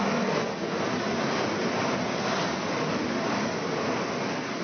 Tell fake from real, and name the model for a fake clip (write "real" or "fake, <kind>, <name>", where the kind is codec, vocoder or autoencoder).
real